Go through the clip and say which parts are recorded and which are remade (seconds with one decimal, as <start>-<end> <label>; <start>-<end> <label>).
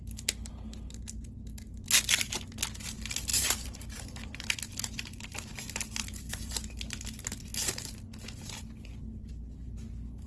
0.0-3.3 recorded; 3.3-6.8 remade; 6.8-10.3 recorded